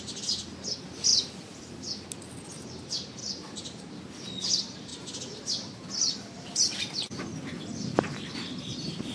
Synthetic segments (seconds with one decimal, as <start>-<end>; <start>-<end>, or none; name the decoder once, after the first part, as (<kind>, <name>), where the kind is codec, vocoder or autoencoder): 3.2-3.8 (vocoder, BigVGAN v2); 4.9-8.2